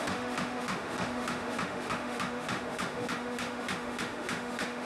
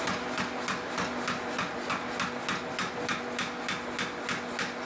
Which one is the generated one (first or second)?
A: first